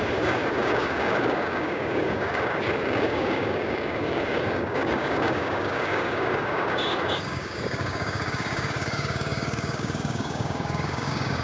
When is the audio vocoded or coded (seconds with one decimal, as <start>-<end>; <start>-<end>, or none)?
0.0-11.4